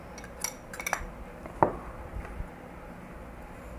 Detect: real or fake real